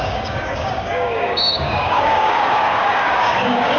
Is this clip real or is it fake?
fake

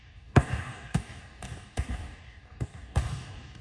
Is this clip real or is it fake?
fake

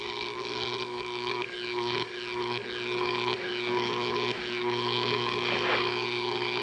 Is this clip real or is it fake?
fake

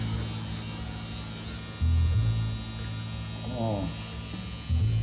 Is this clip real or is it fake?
real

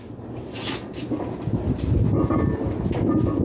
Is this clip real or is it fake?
real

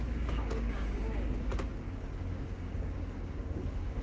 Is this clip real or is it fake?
fake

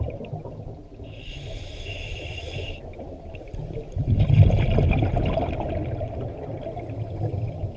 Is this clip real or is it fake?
real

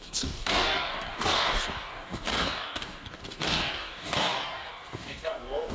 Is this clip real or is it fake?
fake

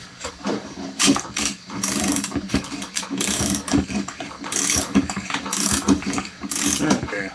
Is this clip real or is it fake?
fake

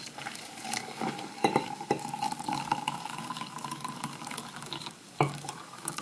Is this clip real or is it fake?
fake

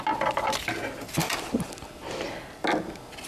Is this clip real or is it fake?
real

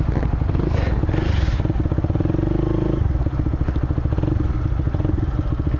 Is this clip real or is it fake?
real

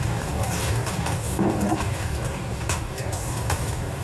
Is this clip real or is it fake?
fake